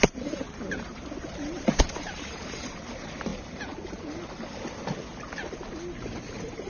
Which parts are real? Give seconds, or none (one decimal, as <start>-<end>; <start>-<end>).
3.3-6.3